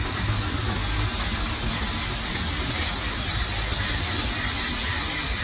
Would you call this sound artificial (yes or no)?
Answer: no